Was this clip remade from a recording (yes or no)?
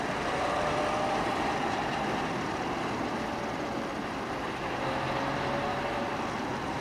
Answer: no